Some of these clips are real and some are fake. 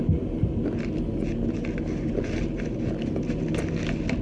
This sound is real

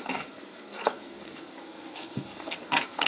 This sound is fake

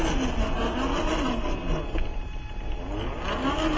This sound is real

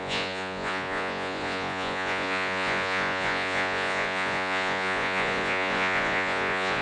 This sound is fake